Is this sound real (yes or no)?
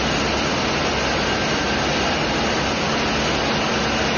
yes